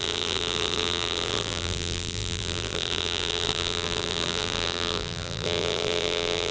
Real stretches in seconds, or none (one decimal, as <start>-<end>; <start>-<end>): none